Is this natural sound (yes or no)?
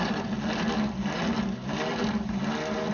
yes